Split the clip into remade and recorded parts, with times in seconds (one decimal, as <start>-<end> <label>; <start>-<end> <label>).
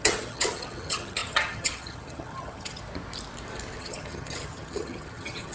0.0-2.8 remade; 2.8-3.8 recorded; 3.8-5.5 remade